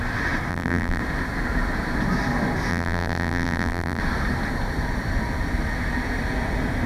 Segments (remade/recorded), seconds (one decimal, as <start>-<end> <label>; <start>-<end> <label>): 0.0-0.5 recorded; 0.5-1.0 remade; 1.0-2.7 recorded; 2.7-4.0 remade; 4.0-6.9 recorded